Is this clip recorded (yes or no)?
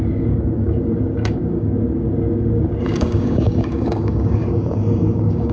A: no